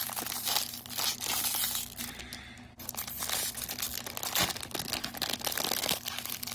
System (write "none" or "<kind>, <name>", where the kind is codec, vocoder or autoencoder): none